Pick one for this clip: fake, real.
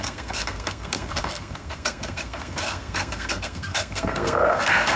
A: fake